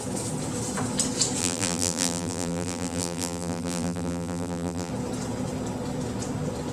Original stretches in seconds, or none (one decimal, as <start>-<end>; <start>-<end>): 0.0-1.4; 4.9-6.7